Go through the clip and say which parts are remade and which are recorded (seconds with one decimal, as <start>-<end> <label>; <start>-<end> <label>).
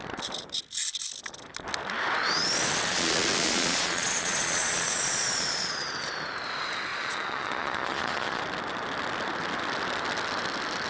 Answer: 0.0-2.9 recorded; 2.9-5.7 remade; 5.7-6.9 recorded; 6.9-8.4 remade; 8.4-10.9 recorded